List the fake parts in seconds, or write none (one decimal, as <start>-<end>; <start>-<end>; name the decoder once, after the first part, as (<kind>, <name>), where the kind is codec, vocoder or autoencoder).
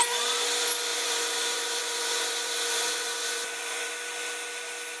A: 0.9-3.9 (vocoder, Vocos)